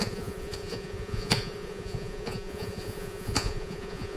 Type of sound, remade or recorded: remade